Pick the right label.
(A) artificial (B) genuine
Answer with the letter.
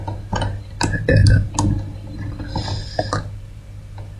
B